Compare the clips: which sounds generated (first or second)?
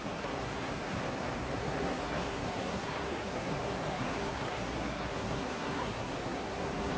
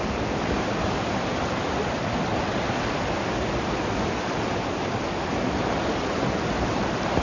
first